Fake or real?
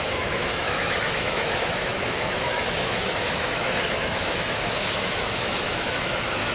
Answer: fake